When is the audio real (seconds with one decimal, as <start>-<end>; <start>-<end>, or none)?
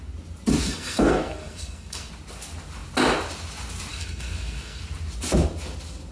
0.0-0.6; 2.1-3.9; 4.8-6.1